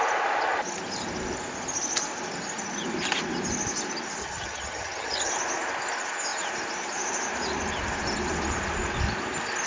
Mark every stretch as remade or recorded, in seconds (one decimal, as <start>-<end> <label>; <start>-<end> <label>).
0.0-4.2 recorded; 4.2-5.3 remade; 5.3-9.7 recorded